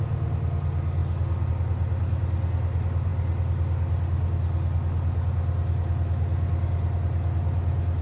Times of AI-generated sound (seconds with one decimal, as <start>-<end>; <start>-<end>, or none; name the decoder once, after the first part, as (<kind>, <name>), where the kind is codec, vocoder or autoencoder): none